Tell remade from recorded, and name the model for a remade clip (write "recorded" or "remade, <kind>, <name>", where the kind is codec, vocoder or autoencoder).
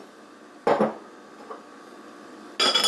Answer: recorded